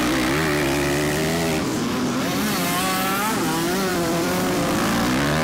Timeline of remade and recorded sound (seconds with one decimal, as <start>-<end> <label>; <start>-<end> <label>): 0.0-3.9 recorded; 3.9-4.8 remade; 4.8-5.4 recorded